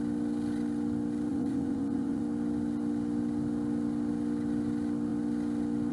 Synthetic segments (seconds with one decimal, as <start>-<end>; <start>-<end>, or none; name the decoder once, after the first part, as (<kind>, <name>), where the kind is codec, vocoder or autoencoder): 1.3-2.2 (vocoder, Vocos)